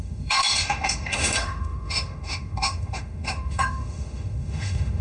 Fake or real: fake